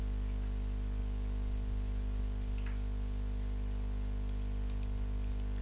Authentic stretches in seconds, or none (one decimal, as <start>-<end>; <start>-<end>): 0.0-5.6